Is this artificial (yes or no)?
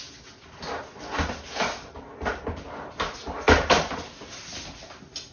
no